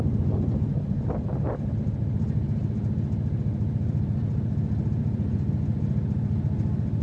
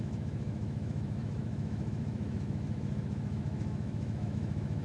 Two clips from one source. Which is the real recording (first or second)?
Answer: first